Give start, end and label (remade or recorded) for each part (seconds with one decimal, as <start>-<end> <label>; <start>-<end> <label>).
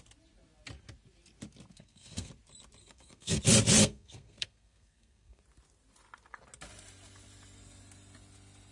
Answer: 0.0-1.7 recorded; 1.7-2.3 remade; 2.3-2.8 recorded; 2.8-3.4 remade; 3.4-3.8 recorded; 3.8-5.4 remade; 5.4-8.7 recorded